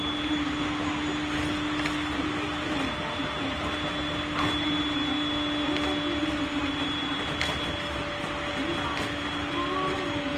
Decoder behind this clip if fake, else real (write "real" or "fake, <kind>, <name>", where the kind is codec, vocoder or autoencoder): real